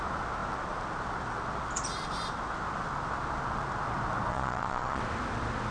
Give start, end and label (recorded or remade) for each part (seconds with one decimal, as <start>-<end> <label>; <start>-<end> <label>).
0.0-4.3 recorded; 4.3-5.0 remade; 5.0-5.7 recorded